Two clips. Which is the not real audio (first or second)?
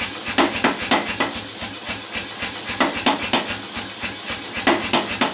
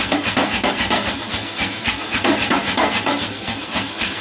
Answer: second